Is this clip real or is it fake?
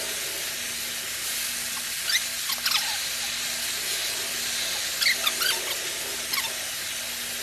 real